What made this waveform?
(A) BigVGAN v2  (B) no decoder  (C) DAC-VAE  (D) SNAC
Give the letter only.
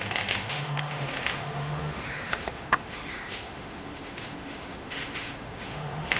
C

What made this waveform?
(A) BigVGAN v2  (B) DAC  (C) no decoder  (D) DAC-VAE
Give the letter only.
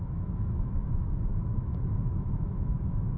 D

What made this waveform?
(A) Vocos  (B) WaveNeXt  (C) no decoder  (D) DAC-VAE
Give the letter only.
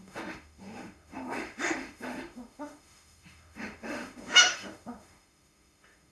D